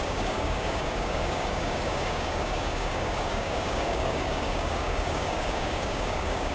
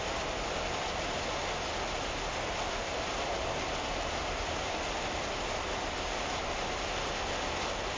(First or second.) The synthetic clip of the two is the first